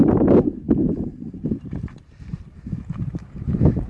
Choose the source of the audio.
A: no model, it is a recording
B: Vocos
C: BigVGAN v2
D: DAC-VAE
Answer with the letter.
C